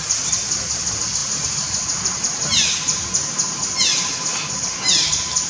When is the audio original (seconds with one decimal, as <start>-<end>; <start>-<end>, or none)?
0.0-5.5